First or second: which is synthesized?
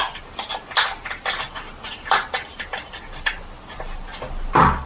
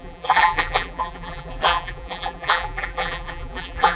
second